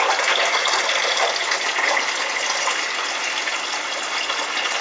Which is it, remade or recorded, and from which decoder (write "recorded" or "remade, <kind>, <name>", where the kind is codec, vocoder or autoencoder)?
recorded